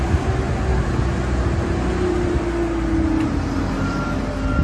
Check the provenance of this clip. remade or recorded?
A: recorded